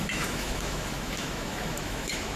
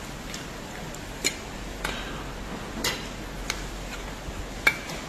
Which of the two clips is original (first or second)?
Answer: second